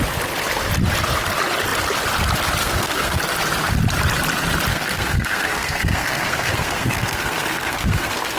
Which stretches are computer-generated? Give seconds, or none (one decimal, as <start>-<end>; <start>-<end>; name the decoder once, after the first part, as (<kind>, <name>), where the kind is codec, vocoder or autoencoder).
2.6-3.2 (codec, SNAC); 4.7-8.4

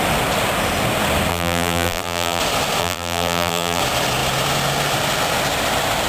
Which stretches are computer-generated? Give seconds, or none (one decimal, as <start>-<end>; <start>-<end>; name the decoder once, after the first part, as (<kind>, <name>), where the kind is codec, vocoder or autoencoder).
1.3-2.4 (vocoder, BigVGAN v2); 2.8-3.8

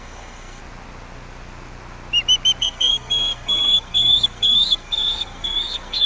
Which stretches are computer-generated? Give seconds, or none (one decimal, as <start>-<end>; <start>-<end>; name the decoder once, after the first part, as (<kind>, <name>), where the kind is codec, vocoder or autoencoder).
0.0-0.6 (codec, SNAC); 2.6-6.1

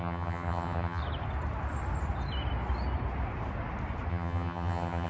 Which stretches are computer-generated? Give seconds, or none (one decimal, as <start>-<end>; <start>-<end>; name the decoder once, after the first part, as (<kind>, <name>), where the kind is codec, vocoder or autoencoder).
0.0-1.0 (vocoder, HiFi-GAN); 4.1-5.1

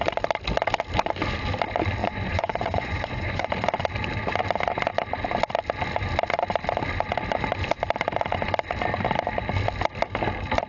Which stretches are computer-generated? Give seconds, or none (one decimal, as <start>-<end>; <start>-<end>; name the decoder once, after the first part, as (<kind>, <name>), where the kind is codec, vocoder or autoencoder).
2.0-3.5 (vocoder, Vocos)